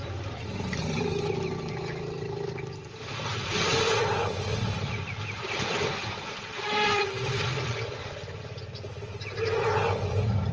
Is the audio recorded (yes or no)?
no